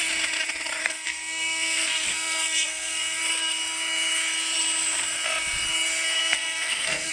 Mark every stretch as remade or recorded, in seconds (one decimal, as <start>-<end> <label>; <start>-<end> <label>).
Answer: 0.0-0.8 recorded; 0.8-3.2 remade; 3.2-6.2 recorded; 6.2-7.1 remade